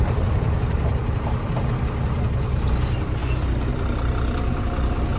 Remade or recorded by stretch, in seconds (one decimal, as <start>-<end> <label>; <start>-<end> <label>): 0.0-5.2 recorded